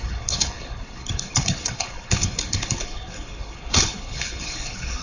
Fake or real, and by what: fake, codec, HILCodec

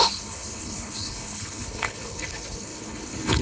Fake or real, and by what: fake, codec, HILCodec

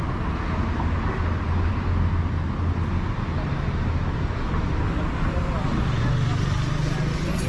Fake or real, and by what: real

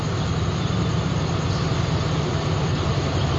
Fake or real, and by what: real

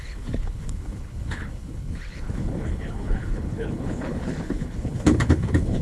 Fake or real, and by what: fake, codec, HILCodec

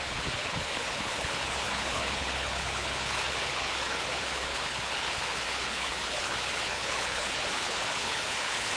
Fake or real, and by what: fake, codec, HILCodec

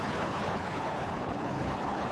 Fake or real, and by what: fake, codec, HILCodec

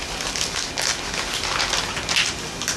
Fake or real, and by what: real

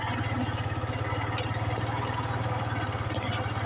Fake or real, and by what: real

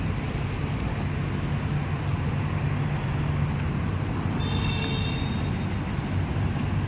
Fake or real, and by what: real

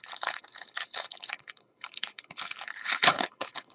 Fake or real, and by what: fake, codec, HILCodec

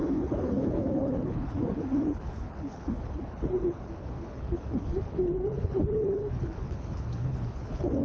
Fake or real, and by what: fake, codec, HILCodec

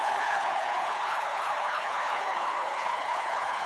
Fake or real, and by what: fake, codec, HILCodec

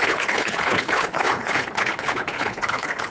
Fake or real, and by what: fake, codec, HILCodec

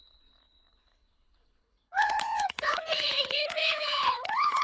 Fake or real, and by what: fake, codec, HILCodec